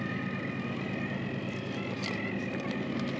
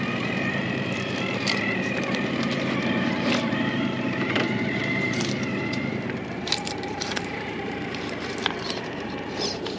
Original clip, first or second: first